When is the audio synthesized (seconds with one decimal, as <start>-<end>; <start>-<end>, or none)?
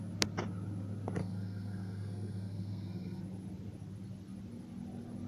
1.2-3.2